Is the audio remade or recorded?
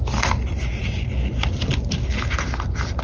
recorded